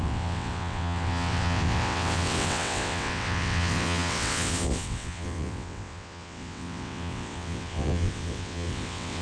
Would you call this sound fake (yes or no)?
yes